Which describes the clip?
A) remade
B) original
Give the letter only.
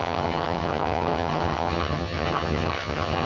A